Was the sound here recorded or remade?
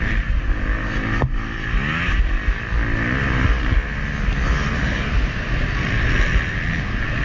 recorded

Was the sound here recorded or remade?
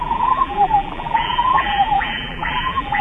remade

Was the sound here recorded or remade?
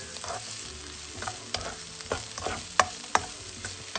recorded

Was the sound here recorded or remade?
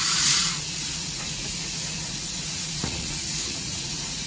remade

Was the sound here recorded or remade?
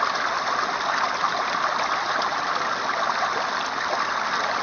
recorded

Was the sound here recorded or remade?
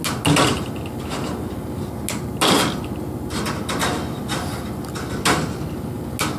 recorded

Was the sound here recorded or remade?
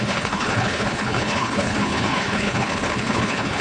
remade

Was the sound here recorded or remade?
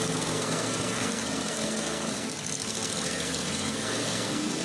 remade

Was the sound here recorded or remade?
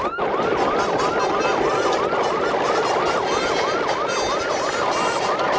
recorded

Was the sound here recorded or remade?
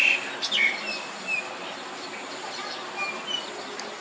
recorded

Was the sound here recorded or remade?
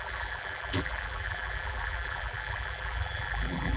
remade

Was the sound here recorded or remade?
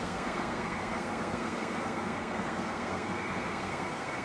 remade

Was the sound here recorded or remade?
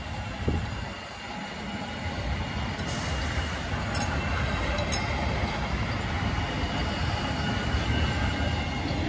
recorded